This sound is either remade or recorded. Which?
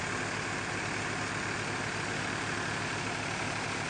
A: recorded